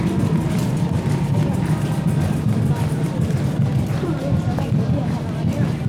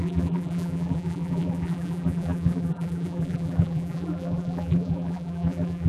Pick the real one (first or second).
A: first